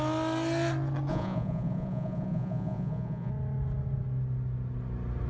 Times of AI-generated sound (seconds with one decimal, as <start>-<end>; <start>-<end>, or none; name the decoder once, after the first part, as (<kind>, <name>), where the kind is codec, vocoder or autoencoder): 1.1-3.3 (vocoder, Vocos)